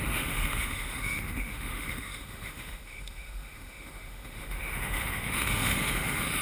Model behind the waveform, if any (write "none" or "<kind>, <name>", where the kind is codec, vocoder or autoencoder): autoencoder, DAC-VAE